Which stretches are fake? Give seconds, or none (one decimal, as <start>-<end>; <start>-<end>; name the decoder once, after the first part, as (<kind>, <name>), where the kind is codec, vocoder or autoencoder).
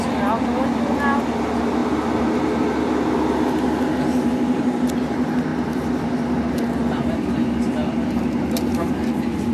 none